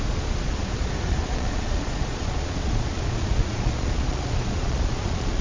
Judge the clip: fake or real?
fake